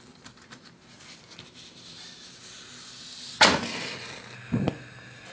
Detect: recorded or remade recorded